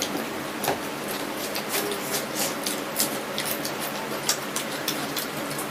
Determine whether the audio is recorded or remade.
remade